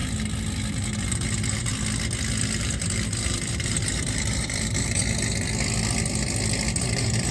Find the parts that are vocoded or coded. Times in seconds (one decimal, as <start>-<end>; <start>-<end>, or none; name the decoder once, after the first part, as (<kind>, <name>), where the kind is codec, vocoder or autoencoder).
0.7-1.7 (vocoder, BigVGAN v2); 2.6-5.0; 6.8-7.3